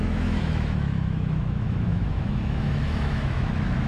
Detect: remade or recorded remade